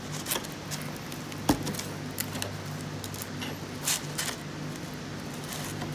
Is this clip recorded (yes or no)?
yes